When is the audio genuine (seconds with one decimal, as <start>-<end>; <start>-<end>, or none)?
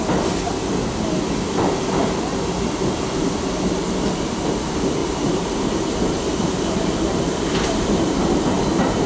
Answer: 0.0-5.0; 8.6-9.1